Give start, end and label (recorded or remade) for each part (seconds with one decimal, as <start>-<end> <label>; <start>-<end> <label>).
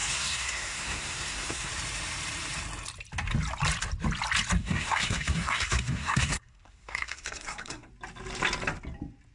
0.0-1.7 remade; 1.7-4.6 recorded; 4.6-7.9 remade; 7.9-9.3 recorded